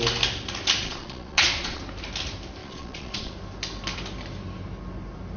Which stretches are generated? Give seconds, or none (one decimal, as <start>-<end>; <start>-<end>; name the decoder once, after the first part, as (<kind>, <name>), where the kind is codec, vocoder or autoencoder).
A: 0.8-1.8 (vocoder, Vocos); 2.6-3.3